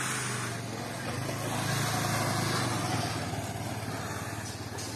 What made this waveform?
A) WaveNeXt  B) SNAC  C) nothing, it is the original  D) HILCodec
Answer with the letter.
C